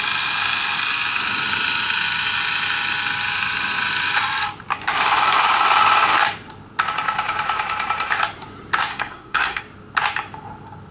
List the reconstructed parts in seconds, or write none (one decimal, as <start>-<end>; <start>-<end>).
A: 8.9-9.6